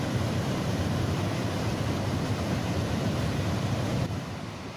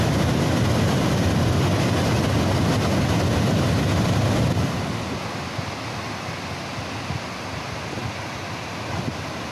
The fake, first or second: first